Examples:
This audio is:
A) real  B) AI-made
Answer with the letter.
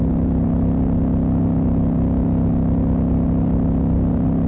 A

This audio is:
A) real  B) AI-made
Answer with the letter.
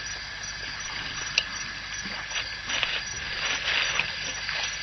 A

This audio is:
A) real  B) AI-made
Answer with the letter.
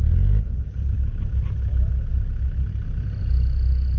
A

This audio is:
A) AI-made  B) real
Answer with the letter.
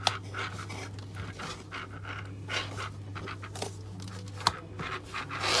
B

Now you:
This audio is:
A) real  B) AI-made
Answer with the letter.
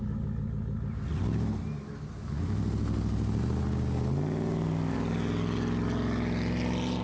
A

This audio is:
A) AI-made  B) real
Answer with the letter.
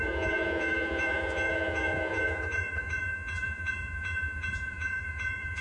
A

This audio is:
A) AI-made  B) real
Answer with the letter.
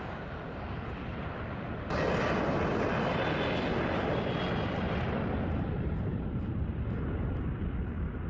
B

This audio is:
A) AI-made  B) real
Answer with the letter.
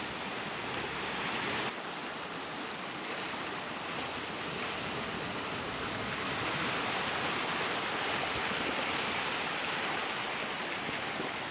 B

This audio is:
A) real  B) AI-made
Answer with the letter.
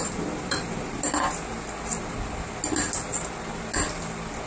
A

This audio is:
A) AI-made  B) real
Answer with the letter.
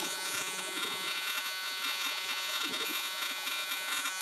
A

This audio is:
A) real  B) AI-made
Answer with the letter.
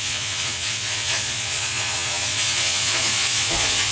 B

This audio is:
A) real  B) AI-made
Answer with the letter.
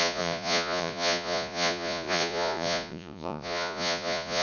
B